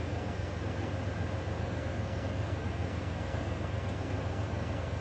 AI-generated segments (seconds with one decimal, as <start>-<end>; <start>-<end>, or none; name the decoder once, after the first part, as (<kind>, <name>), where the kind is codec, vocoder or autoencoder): 0.0-0.9 (codec, SNAC); 1.6-5.0